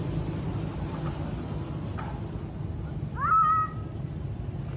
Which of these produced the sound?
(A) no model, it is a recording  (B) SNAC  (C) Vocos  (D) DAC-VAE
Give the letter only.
A